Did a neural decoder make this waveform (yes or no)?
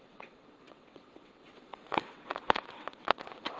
yes